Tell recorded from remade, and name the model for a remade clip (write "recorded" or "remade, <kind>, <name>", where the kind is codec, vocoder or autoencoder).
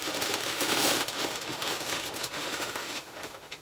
remade, autoencoder, DAC-VAE